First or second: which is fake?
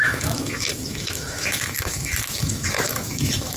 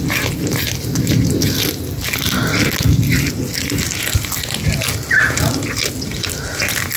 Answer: first